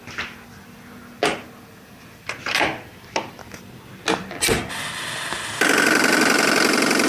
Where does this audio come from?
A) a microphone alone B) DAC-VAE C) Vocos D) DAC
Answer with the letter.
A